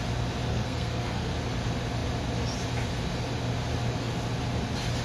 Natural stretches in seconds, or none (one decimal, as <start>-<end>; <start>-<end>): 0.0-0.5; 1.3-5.0